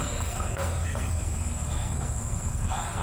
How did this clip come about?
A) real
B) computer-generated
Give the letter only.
B